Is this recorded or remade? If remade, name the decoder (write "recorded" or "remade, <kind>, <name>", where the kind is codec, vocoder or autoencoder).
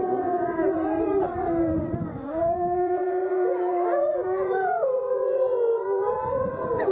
remade, vocoder, Vocos